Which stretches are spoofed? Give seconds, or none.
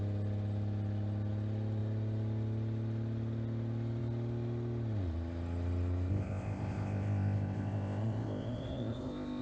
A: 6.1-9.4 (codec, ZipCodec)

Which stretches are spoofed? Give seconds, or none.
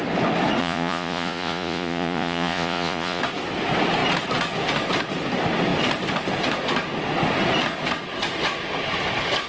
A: 0.6-3.2 (vocoder, Vocos)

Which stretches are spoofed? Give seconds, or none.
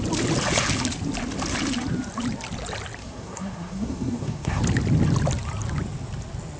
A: 3.0-4.6 (codec, SNAC)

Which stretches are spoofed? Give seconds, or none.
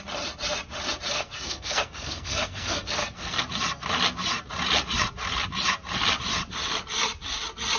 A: 1.1-3.4 (codec, SNAC)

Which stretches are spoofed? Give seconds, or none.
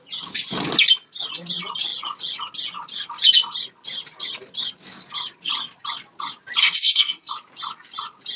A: 6.6-7.3 (codec, SNAC)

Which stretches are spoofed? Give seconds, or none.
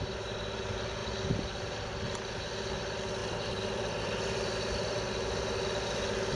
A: 3.2-5.1 (vocoder, BigVGAN v2)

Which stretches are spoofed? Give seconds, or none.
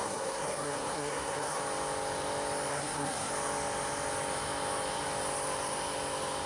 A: 0.0-1.6 (codec, SNAC); 2.7-3.3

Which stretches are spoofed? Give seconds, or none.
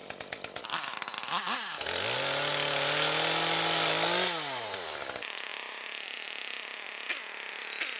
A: none